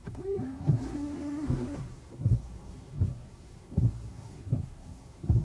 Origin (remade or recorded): remade